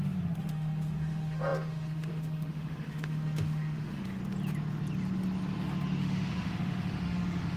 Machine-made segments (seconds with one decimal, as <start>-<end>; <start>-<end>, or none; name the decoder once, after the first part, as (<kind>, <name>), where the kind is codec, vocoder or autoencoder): 0.0-4.2 (autoencoder, DAC-VAE); 6.0-7.6